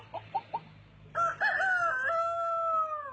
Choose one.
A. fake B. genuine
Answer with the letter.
B